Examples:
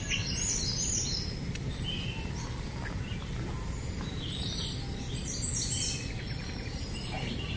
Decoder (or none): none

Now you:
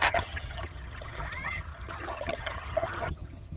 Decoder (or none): vocoder, HiFi-GAN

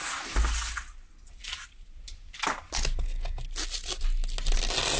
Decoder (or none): none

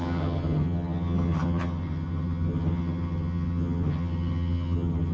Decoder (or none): vocoder, HiFi-GAN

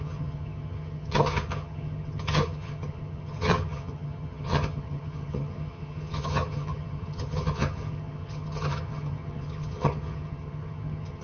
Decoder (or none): vocoder, HiFi-GAN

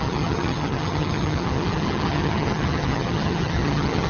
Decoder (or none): vocoder, HiFi-GAN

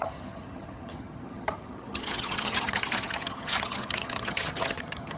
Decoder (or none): vocoder, HiFi-GAN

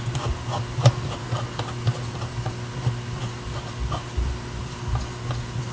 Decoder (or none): none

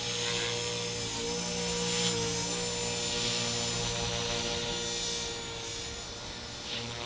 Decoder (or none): none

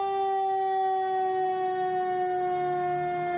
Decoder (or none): none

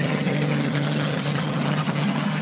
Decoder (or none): vocoder, HiFi-GAN